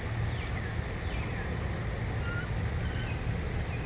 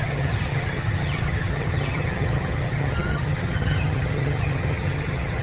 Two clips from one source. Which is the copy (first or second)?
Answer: second